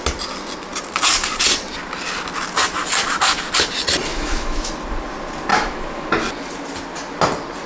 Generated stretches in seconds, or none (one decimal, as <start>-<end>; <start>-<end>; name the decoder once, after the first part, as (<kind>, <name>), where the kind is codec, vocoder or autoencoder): 4.1-4.7 (autoencoder, DAC-VAE); 5.5-6.1